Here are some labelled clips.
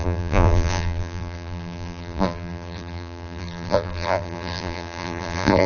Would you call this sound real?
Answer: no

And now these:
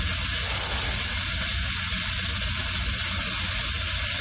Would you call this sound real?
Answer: yes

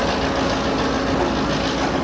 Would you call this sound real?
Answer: yes